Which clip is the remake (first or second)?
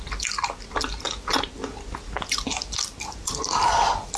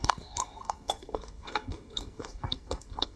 second